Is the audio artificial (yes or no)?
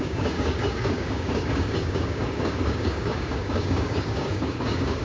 yes